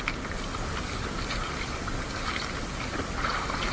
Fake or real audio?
real